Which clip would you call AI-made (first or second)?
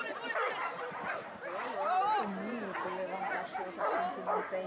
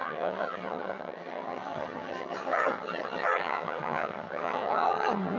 second